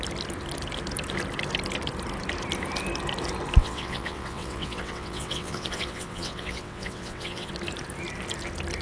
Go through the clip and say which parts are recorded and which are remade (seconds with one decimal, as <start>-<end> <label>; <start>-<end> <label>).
0.0-3.6 recorded; 3.6-7.5 remade; 7.5-8.8 recorded